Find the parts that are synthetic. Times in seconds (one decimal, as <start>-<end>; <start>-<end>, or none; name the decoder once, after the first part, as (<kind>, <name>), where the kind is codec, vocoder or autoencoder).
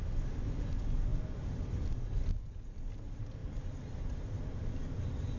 none